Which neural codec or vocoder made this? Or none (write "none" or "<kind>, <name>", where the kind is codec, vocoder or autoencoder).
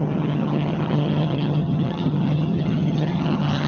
vocoder, HiFi-GAN